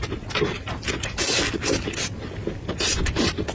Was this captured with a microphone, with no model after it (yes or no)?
yes